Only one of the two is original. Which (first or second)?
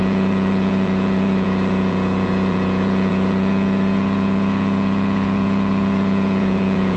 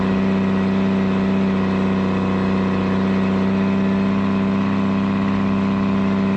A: second